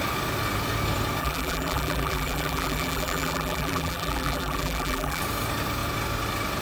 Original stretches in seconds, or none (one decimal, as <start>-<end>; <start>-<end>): 0.0-1.2; 5.2-6.6

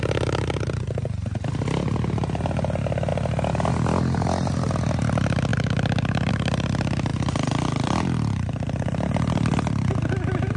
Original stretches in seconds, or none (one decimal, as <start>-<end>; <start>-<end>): 0.0-7.1; 9.9-10.6